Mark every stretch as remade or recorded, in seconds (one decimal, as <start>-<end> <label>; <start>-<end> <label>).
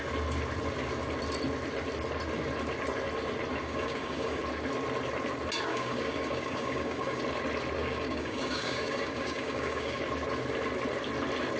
0.0-3.6 recorded; 3.6-4.4 remade; 4.4-5.7 recorded; 5.7-7.2 remade; 7.2-7.8 recorded; 7.8-10.0 remade; 10.0-11.6 recorded